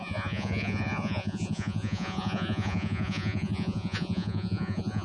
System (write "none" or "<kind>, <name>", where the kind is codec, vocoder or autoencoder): vocoder, Vocos